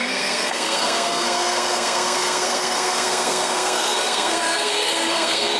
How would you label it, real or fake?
fake